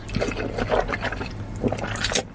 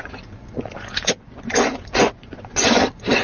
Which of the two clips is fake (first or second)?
second